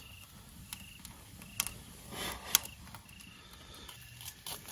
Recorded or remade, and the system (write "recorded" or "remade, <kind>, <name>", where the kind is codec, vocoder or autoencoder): recorded